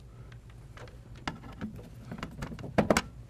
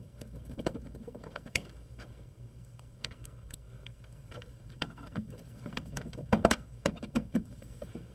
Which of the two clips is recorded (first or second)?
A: first